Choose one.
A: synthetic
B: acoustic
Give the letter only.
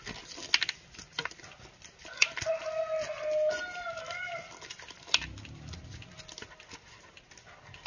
B